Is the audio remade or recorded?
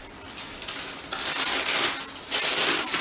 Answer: recorded